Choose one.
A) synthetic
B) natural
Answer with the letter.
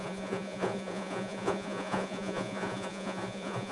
A